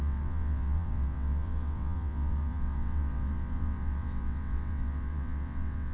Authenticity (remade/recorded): remade